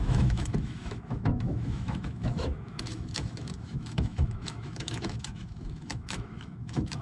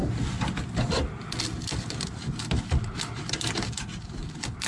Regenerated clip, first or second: first